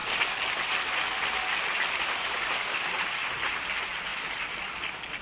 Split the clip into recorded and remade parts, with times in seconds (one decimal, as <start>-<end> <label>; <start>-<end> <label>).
0.0-3.1 remade; 3.1-4.1 recorded; 4.1-5.2 remade